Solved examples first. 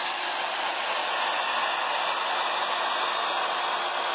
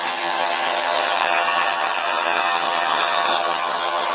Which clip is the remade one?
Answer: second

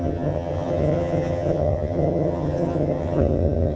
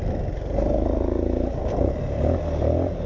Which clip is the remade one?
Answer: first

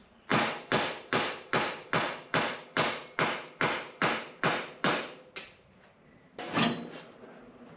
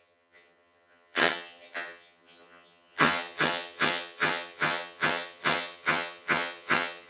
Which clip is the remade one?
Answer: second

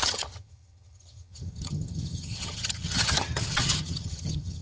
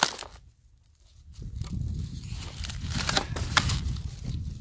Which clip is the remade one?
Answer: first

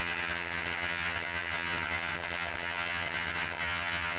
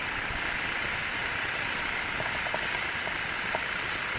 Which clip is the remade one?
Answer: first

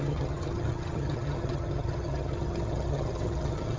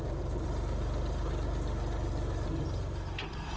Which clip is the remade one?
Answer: first